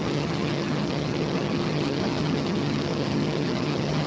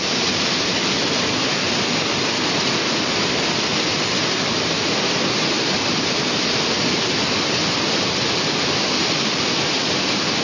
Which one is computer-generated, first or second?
first